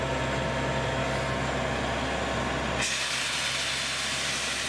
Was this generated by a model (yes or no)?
no